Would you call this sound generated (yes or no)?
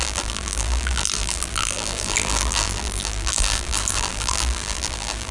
yes